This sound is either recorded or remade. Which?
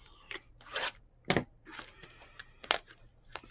remade